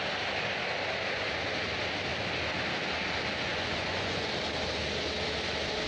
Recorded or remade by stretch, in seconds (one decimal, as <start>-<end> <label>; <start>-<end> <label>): 0.0-3.5 recorded; 3.5-4.3 remade; 4.3-5.9 recorded